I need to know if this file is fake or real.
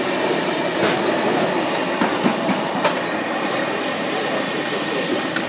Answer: real